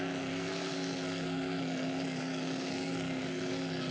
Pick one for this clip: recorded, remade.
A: remade